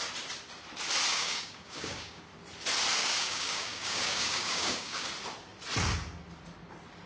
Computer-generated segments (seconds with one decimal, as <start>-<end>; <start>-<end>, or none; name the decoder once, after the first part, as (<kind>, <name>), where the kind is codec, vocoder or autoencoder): 1.1-2.2 (codec, DAC); 3.0-5.1